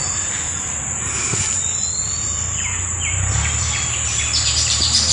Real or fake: fake